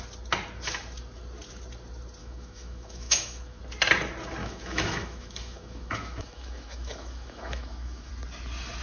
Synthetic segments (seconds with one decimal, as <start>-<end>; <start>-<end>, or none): 2.2-3.6; 4.4-8.1